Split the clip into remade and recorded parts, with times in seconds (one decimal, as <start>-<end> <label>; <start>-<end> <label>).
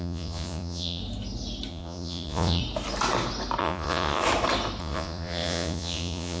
0.0-1.0 remade; 1.0-1.7 recorded; 1.7-2.6 remade; 2.6-3.6 recorded; 3.6-4.2 remade; 4.2-4.8 recorded; 4.8-6.4 remade